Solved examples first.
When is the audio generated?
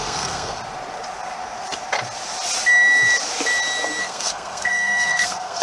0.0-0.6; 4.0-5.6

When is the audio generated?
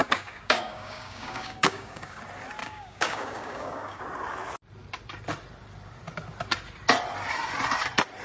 0.0-2.2; 2.6-4.0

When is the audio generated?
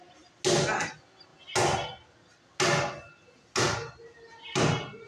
none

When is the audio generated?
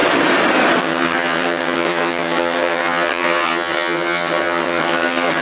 0.8-5.4